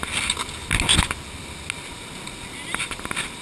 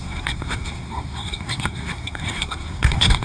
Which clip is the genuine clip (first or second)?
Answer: first